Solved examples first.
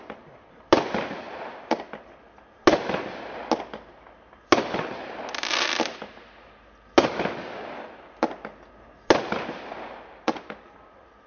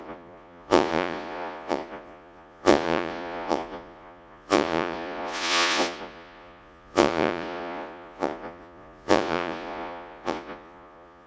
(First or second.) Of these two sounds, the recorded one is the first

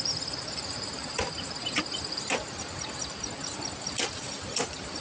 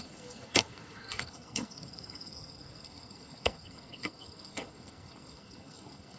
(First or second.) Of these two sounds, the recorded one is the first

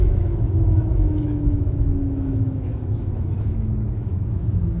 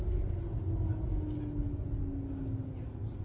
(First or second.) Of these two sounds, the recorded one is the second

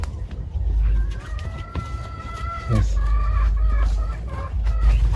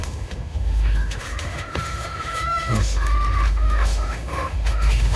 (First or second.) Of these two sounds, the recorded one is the first